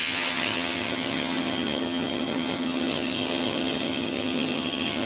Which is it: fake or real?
fake